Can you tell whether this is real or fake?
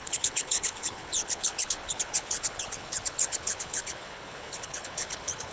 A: fake